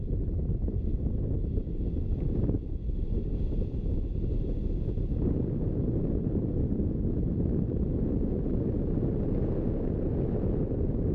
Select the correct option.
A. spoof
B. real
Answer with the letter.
B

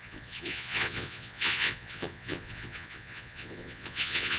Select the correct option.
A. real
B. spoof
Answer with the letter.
B